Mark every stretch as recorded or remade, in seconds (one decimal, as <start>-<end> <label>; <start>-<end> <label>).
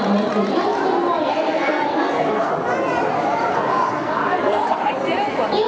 0.0-1.2 recorded; 1.2-2.5 remade; 2.5-3.5 recorded; 3.5-4.9 remade; 4.9-5.7 recorded